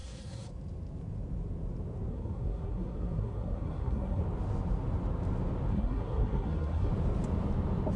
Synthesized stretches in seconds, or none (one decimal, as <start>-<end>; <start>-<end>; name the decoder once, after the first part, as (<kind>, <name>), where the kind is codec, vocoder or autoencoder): 0.0-0.5 (codec, SNAC); 2.1-4.2; 5.7-6.9